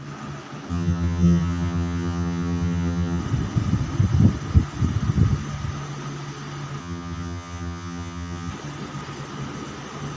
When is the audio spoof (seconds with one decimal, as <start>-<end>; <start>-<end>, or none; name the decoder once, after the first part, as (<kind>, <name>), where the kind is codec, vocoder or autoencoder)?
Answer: 0.7-3.2 (vocoder, HiFi-GAN); 6.8-8.5